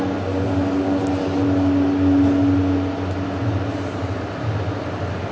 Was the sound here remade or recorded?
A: recorded